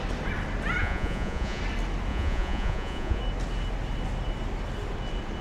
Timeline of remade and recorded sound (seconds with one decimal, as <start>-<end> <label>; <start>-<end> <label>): 0.0-0.8 recorded; 0.8-1.6 remade; 1.6-2.1 recorded; 2.1-3.2 remade; 3.2-5.4 recorded